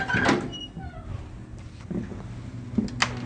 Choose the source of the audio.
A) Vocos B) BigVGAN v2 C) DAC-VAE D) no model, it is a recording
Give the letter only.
D